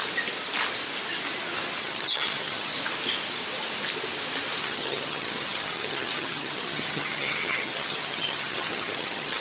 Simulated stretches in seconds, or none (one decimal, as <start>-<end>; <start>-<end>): 1.8-2.7; 4.6-9.4